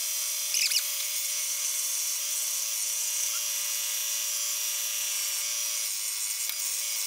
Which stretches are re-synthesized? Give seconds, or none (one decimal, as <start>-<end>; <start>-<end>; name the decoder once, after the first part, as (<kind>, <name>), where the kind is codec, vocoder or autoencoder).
0.0-2.6 (vocoder, BigVGAN v2)